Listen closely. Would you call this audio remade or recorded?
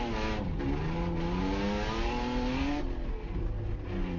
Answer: recorded